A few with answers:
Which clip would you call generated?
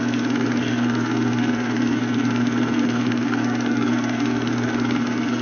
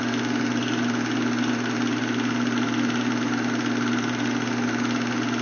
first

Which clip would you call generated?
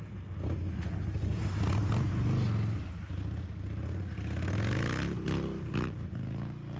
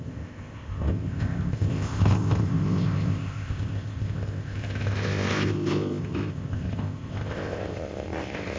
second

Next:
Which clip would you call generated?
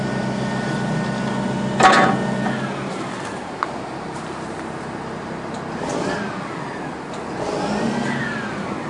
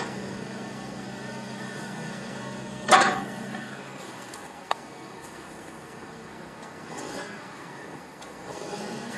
second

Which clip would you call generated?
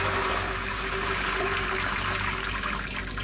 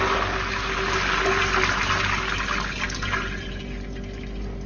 first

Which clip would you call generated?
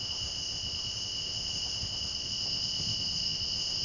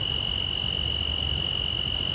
first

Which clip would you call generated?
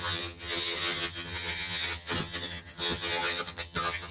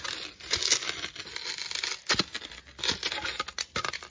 first